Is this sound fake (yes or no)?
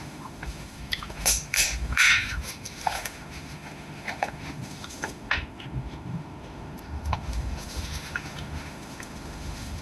yes